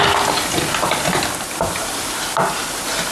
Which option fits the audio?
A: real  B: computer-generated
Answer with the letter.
A